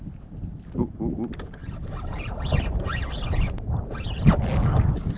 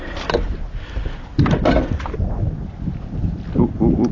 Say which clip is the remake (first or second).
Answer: second